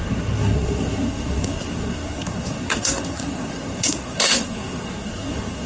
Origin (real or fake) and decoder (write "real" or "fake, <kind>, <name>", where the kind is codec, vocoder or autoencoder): fake, codec, SNAC